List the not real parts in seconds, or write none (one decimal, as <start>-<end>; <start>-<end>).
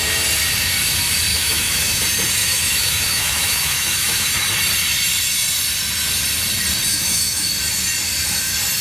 1.3-2.0; 2.4-4.3; 6.9-7.5